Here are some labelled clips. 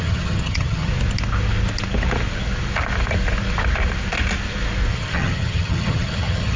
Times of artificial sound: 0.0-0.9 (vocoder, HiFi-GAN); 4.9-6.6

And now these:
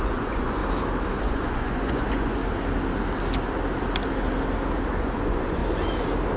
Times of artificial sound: 0.0-0.6 (vocoder, Vocos); 1.2-2.4; 5.0-5.6